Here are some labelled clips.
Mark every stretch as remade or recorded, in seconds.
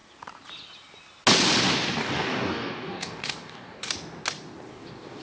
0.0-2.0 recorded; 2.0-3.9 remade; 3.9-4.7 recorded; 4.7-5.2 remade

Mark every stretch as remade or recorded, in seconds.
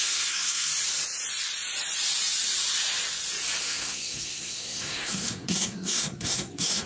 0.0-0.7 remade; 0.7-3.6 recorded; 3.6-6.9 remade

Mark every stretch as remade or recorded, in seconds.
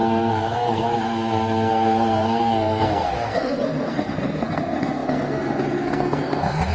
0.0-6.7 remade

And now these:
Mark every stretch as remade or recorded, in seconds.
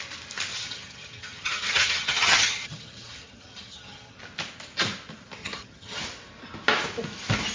0.0-0.5 recorded; 0.5-4.2 remade; 4.2-5.4 recorded; 5.4-6.0 remade; 6.0-7.5 recorded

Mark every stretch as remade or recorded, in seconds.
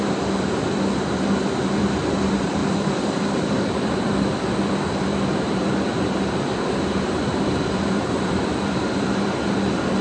0.0-10.0 remade